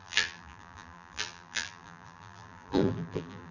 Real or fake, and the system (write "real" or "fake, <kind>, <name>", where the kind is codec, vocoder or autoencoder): fake, vocoder, BigVGAN v2